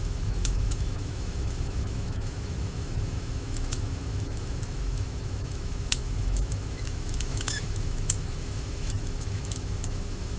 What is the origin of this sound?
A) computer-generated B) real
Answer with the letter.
A